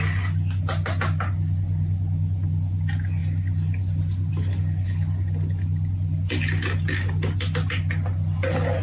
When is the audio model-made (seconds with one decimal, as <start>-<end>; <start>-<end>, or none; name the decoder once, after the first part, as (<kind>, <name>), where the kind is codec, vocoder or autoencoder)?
none